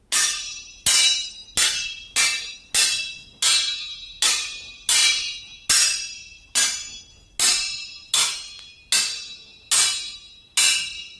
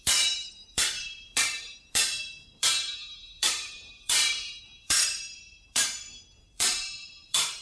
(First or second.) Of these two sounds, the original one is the first